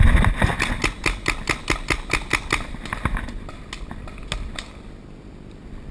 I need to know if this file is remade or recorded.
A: recorded